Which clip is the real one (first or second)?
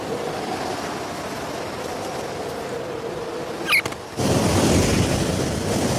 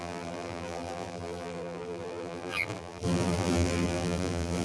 first